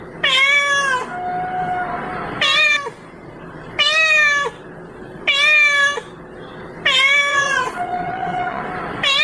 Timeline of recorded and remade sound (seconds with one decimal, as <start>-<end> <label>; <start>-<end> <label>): 0.0-7.3 recorded; 7.3-8.6 remade; 8.6-9.2 recorded